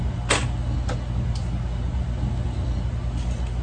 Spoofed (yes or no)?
no